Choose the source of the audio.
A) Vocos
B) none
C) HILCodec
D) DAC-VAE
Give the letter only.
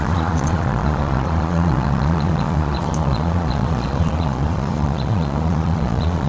A